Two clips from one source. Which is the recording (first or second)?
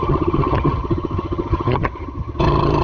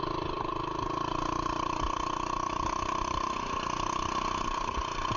second